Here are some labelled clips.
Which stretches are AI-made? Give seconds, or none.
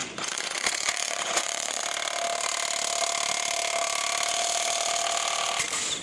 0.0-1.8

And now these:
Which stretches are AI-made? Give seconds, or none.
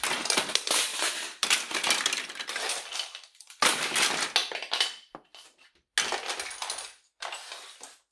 0.9-3.6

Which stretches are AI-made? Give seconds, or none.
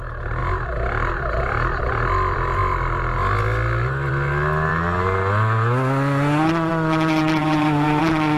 7.4-8.0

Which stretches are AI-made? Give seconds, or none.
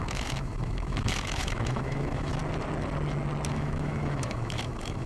0.0-2.4; 3.5-5.1